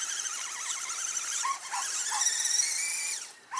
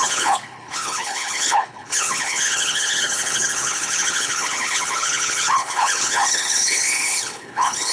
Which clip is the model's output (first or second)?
second